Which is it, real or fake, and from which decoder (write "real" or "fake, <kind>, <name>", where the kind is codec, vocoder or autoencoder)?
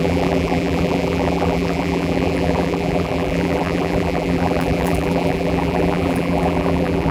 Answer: fake, vocoder, BigVGAN v2